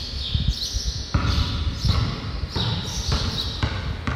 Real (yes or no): yes